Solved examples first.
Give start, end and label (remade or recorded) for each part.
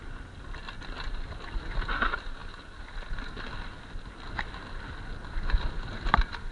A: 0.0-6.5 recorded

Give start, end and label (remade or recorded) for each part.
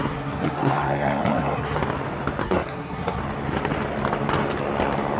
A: 0.0-1.8 remade; 1.8-2.4 recorded; 2.4-3.2 remade; 3.2-5.2 recorded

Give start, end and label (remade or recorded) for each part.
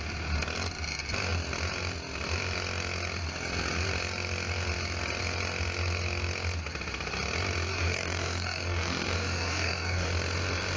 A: 0.0-7.7 recorded; 7.7-10.1 remade; 10.1-10.8 recorded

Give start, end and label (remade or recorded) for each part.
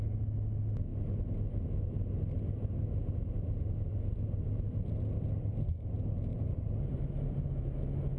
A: 0.0-6.3 recorded; 6.3-7.6 remade; 7.6-8.2 recorded